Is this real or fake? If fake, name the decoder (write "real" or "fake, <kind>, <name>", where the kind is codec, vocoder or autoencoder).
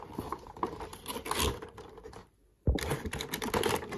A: real